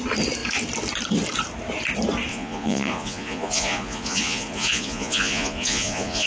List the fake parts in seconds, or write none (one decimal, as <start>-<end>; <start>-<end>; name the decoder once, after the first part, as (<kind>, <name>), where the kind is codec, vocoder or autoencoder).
2.3-6.3 (vocoder, Vocos)

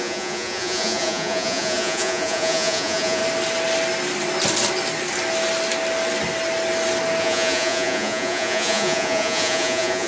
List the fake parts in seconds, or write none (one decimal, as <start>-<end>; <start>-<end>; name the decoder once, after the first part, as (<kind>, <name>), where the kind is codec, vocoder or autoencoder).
0.0-3.2 (vocoder, Vocos); 7.2-10.1

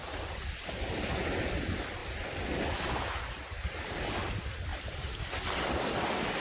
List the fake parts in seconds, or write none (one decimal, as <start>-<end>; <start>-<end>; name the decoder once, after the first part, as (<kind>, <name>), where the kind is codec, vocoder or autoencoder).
0.0-0.5 (vocoder, BigVGAN v2); 4.7-5.2